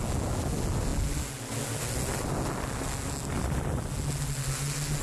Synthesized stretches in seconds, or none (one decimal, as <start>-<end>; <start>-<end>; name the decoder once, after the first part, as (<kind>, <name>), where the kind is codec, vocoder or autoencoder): none